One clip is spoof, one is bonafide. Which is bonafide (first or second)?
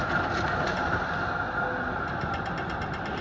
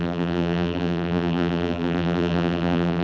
first